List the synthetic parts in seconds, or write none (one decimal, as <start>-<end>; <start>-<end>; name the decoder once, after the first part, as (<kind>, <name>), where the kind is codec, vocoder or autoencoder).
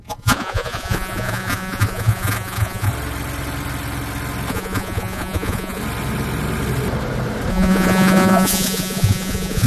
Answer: 0.0-2.9 (vocoder, Vocos); 4.5-5.8; 7.5-9.7